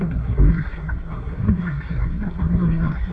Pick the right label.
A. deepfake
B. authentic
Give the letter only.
A